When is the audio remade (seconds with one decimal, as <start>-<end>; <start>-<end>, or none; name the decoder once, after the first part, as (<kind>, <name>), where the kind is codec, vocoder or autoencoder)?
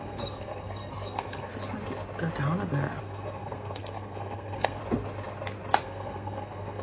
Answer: 0.0-1.5 (codec, SNAC); 3.0-4.8; 5.8-6.8